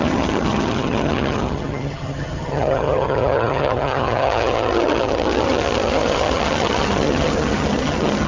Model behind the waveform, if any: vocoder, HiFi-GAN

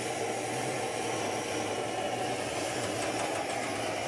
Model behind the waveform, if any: none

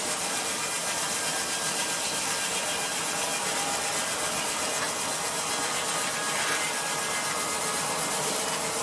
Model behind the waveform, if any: none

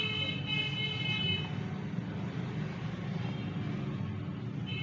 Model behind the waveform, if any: none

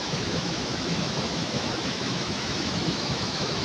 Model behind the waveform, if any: autoencoder, DAC-VAE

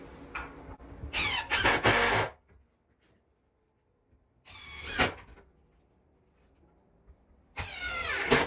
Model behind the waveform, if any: none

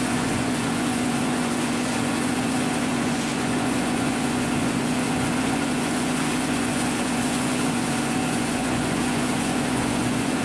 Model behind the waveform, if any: vocoder, Vocos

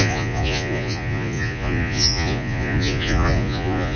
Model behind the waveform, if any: vocoder, Vocos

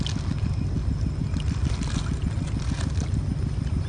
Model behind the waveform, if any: none